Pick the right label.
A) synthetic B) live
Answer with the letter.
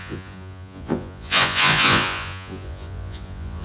A